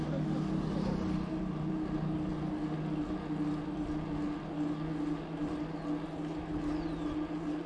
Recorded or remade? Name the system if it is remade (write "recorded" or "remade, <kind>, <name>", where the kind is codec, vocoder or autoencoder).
recorded